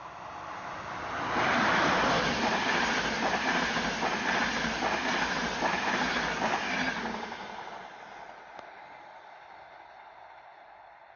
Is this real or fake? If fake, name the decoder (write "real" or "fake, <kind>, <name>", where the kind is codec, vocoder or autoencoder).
real